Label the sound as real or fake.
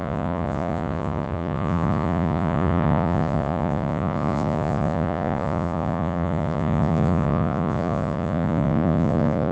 fake